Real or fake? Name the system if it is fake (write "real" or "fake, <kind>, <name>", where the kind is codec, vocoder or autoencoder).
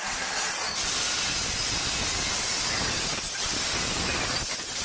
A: real